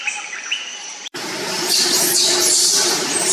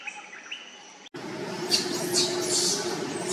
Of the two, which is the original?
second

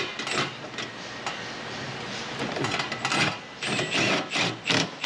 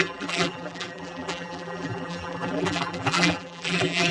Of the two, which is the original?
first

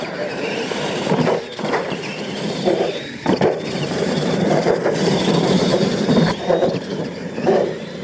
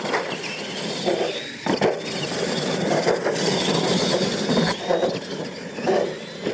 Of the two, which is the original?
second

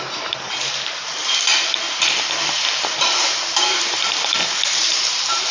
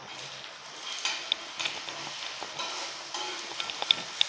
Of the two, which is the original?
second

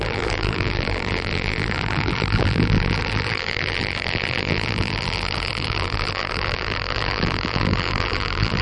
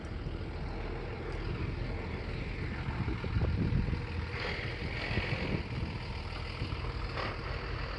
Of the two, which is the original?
second